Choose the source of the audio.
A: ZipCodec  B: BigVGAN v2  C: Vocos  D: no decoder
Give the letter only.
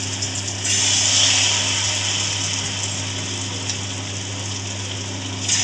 D